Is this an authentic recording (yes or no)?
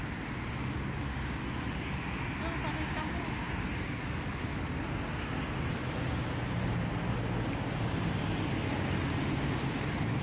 yes